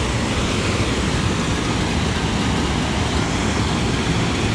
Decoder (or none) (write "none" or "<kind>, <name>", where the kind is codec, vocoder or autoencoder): none